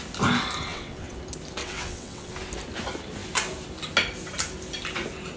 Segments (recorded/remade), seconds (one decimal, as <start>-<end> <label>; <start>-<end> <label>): 0.0-0.7 recorded; 0.7-1.2 remade; 1.2-1.6 recorded; 1.6-2.3 remade; 2.3-5.4 recorded